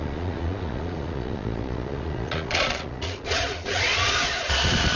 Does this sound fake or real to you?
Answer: fake